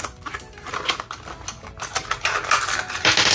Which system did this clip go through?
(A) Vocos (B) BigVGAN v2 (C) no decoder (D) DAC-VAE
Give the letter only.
C